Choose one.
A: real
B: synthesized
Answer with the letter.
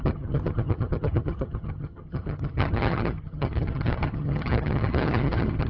B